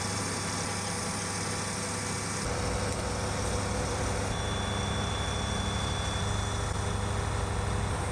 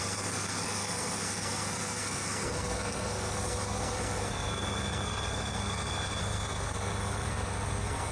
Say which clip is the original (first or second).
first